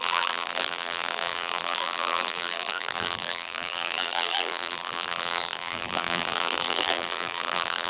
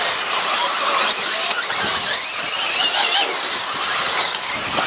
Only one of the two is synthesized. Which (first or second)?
first